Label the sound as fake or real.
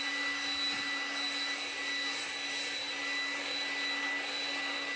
real